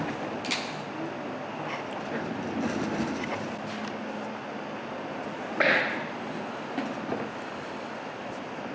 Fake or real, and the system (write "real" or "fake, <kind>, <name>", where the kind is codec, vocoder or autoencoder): real